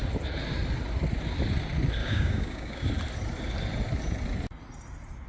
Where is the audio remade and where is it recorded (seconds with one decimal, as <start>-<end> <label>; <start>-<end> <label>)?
0.0-2.0 recorded; 2.0-2.9 remade; 2.9-5.3 recorded